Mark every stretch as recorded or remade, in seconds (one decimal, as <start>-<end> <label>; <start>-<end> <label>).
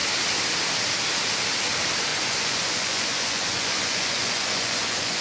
0.0-2.1 recorded; 2.1-5.2 remade